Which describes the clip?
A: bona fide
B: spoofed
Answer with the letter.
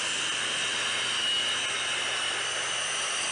A